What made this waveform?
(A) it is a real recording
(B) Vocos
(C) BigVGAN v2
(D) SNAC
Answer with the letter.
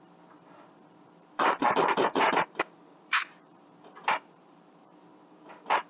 C